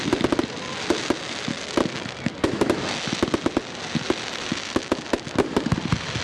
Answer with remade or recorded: recorded